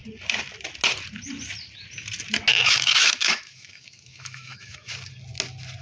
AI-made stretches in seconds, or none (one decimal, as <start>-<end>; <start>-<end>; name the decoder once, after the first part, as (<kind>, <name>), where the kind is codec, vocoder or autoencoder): 2.5-4.9 (autoencoder, DAC-VAE)